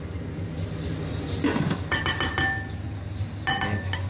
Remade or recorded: recorded